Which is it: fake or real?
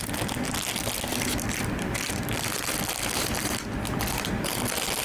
real